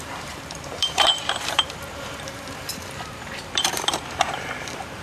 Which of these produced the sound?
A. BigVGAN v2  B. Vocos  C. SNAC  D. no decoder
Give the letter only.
A